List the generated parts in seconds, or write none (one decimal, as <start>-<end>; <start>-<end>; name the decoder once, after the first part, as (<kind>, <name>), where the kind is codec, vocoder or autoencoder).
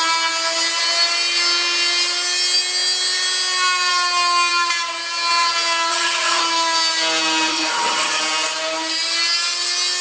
5.9-6.4 (vocoder, HiFi-GAN); 7.5-8.2